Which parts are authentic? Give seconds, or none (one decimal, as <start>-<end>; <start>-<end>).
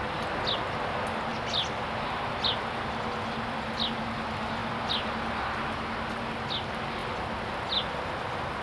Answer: 0.0-8.6